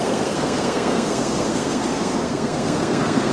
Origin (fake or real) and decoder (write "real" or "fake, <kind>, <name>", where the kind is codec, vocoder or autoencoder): fake, codec, SNAC